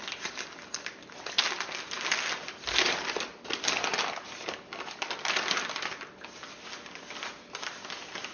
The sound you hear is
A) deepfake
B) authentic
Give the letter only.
B